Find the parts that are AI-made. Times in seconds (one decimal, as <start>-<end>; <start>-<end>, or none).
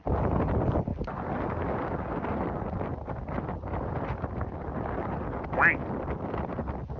none